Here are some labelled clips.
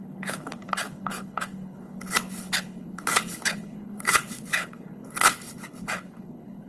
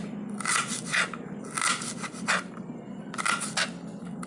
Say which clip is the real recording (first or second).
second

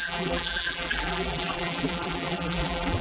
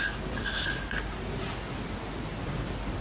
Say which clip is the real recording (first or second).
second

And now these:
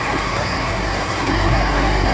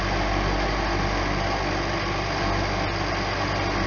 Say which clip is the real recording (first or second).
second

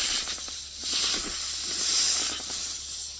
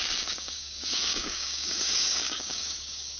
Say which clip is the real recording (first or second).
first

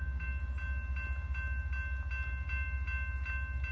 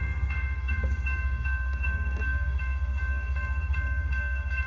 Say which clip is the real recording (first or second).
first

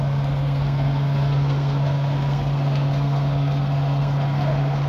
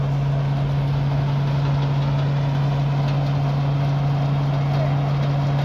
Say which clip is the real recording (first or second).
second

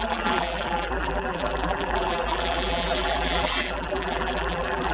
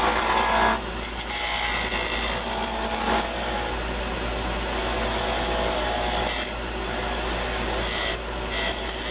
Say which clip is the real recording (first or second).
second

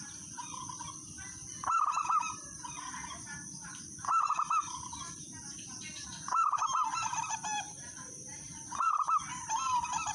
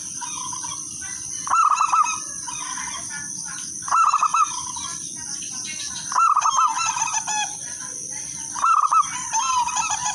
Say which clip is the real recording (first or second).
second